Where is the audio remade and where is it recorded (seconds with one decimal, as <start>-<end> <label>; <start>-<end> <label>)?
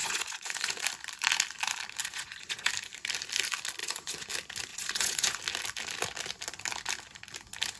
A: 0.0-0.8 remade; 0.8-2.0 recorded; 2.0-2.7 remade; 2.7-3.8 recorded; 3.8-4.3 remade; 4.3-4.7 recorded; 4.7-5.4 remade; 5.4-7.8 recorded